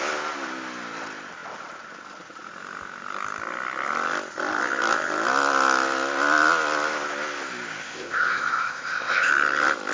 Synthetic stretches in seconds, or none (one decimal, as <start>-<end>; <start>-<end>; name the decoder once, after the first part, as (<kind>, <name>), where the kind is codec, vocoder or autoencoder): 7.8-9.3 (codec, ZipCodec)